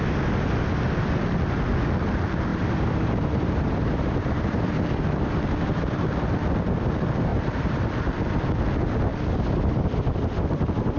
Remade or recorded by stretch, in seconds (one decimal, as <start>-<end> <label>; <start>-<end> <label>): 0.0-2.5 recorded; 2.5-4.6 remade; 4.6-7.3 recorded; 7.3-7.9 remade; 7.9-11.0 recorded